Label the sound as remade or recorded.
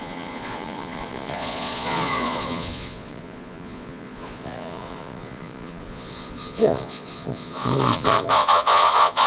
remade